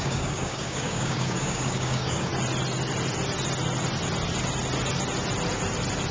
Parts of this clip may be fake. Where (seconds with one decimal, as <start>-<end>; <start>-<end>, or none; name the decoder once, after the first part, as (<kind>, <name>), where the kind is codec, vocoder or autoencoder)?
0.0-2.3 (codec, DAC)